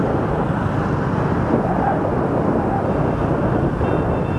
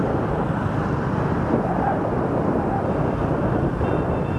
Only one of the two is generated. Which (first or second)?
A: second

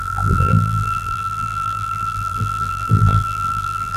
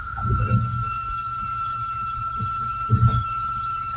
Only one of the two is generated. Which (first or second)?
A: first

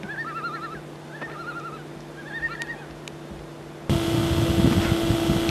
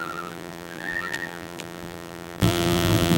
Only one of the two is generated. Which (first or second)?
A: second